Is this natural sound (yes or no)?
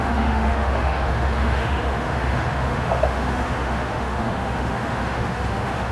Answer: no